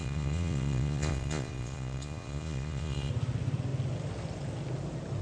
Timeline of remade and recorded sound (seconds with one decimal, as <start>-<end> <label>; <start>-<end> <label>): 0.0-3.1 remade; 3.1-5.2 recorded